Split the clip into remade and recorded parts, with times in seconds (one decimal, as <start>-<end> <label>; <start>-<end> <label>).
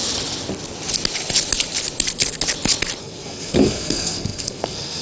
0.0-3.0 recorded; 3.0-5.0 remade